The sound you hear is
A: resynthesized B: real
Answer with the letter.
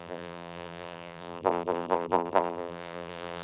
A